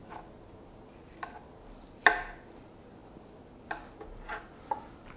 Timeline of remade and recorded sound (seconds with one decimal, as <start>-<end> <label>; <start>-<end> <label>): 0.0-5.2 recorded